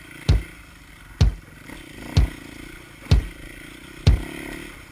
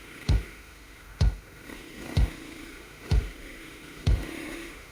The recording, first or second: first